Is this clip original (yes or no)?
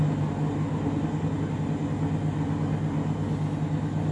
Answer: yes